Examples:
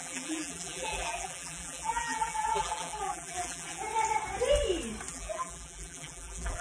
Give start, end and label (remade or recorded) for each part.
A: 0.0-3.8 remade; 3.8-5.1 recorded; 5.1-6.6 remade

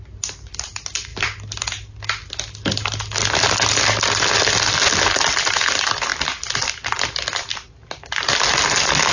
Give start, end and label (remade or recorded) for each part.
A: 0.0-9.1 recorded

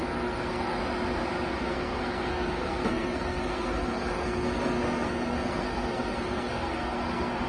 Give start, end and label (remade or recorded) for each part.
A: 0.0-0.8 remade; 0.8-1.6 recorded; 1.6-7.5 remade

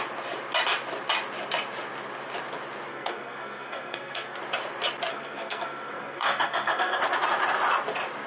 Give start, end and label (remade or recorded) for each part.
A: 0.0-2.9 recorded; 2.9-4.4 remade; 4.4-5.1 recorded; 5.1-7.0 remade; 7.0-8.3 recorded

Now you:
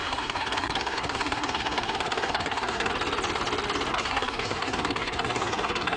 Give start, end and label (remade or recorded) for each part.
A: 0.0-2.9 remade; 2.9-3.9 recorded; 3.9-6.0 remade

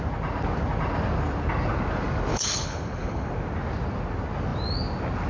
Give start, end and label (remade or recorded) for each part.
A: 0.0-2.3 recorded; 2.3-3.3 remade; 3.3-5.3 recorded